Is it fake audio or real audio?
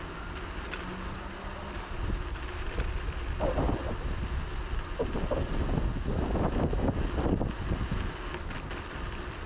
real